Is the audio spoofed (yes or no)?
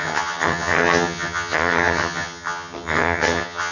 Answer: yes